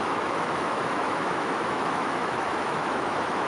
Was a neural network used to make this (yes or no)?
yes